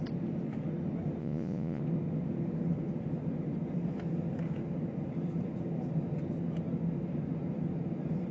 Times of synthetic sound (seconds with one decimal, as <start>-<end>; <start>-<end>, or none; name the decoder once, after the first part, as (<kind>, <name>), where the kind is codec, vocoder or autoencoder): 1.2-1.8 (vocoder, Vocos)